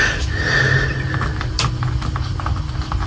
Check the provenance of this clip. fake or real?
real